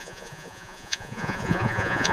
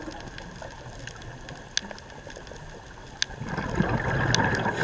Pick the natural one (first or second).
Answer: second